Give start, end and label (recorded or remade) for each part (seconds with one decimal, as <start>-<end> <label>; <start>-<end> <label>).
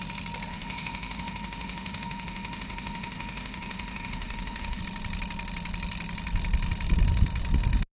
0.0-0.5 recorded; 0.5-4.8 remade; 4.8-7.9 recorded